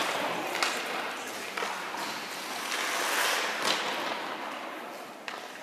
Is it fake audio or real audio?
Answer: real